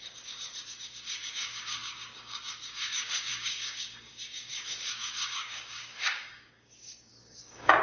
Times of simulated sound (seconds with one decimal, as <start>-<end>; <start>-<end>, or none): 0.0-7.8